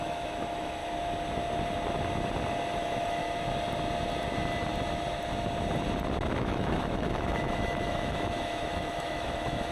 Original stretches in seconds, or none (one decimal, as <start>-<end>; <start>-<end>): 0.8-2.7; 3.2-6.4